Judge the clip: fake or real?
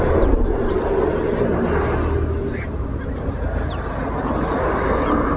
real